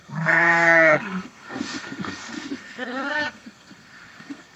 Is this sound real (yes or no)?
no